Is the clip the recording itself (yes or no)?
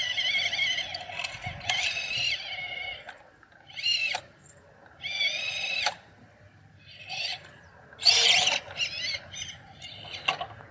yes